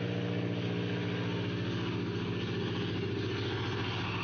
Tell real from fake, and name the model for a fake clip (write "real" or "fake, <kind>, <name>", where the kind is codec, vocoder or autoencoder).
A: real